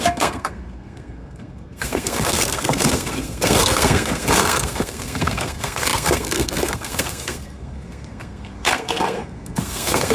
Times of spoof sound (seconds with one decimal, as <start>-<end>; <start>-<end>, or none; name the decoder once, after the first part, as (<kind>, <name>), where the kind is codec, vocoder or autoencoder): 0.0-10.1 (codec, SNAC)